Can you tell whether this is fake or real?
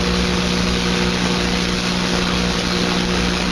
real